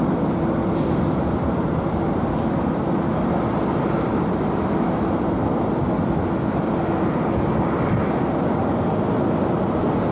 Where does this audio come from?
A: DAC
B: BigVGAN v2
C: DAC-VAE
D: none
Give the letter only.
D